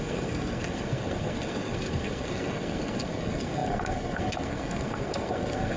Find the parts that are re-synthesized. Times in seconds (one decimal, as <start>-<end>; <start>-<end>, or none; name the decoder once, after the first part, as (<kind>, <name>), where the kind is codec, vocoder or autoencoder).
0.0-5.8 (codec, SNAC)